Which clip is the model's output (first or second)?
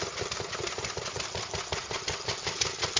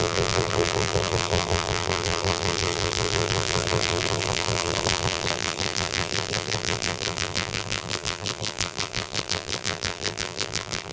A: second